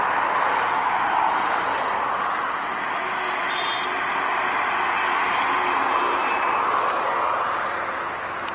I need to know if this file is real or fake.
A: real